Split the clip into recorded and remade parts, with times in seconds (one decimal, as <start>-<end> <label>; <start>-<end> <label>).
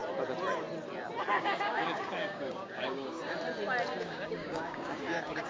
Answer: 0.0-1.4 recorded; 1.4-3.2 remade; 3.2-4.0 recorded; 4.0-5.5 remade